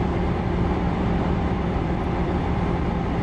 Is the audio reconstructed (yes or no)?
yes